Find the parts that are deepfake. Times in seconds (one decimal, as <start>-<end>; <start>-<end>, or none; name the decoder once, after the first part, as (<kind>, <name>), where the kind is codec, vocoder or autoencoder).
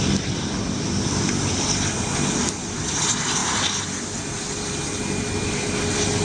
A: none